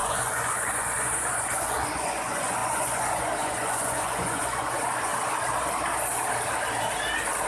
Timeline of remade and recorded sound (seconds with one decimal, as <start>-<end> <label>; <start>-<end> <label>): 0.0-5.1 remade; 5.1-7.5 recorded